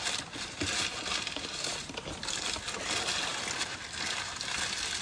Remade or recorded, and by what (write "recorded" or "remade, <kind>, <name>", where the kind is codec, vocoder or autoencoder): recorded